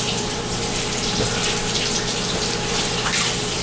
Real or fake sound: real